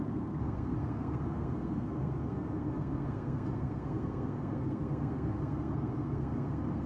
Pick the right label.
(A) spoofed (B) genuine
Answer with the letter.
A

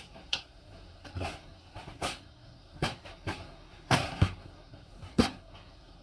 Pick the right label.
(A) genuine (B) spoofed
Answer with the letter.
B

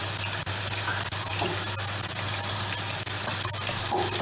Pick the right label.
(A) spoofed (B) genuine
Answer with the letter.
B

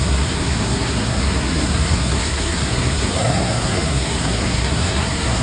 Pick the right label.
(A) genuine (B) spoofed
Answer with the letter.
B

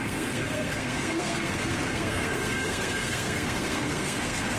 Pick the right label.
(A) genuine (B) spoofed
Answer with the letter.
B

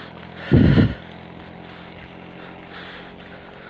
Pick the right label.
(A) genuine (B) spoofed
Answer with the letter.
A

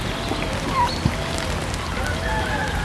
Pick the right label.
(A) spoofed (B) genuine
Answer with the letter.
B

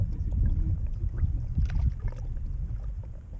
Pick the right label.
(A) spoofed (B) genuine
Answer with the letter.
B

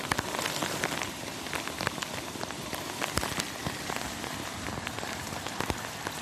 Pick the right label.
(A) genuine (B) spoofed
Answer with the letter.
A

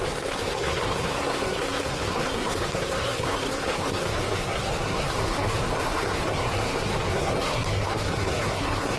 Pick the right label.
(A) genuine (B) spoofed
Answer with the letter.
B